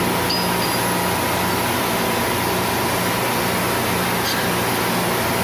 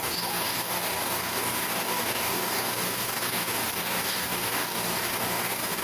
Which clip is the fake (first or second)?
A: second